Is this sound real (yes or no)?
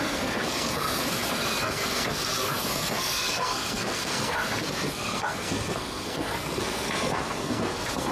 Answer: no